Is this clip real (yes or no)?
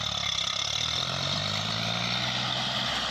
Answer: yes